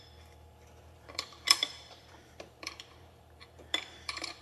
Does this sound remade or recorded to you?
remade